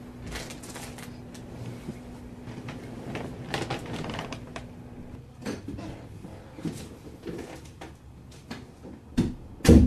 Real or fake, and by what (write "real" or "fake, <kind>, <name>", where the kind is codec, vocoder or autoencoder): real